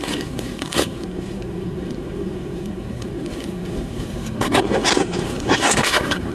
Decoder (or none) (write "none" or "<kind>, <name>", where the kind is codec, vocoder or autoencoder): codec, SNAC